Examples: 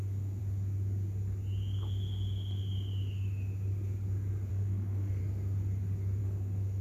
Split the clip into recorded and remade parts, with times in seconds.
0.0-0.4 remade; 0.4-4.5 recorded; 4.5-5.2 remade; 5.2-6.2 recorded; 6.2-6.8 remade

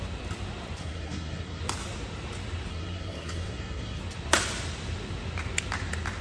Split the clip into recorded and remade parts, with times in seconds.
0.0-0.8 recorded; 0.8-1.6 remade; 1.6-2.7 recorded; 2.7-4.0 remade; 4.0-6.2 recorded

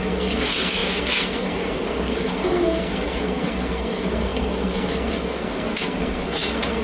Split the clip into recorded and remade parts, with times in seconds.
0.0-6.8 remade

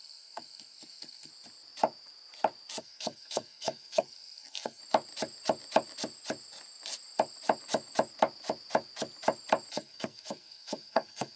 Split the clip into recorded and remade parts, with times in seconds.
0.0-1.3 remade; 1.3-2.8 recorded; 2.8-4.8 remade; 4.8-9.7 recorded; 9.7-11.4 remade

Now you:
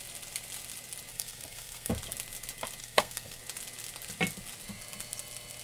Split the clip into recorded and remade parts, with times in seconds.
0.0-1.1 recorded; 1.1-1.9 remade; 1.9-2.8 recorded; 2.8-3.4 remade; 3.4-5.6 recorded

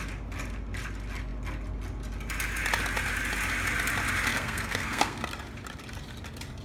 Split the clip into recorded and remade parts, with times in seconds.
0.0-4.3 recorded; 4.3-5.3 remade; 5.3-6.6 recorded